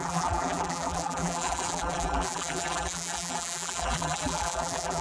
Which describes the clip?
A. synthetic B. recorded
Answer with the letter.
A